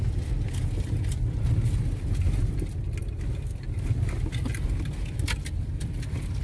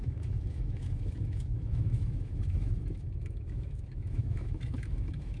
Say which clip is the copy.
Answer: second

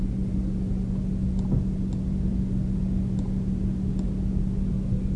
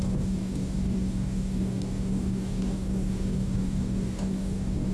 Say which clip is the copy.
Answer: second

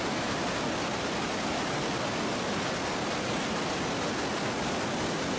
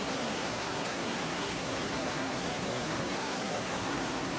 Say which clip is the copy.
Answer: second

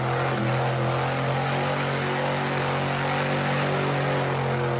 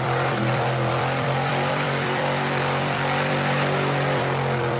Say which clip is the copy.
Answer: second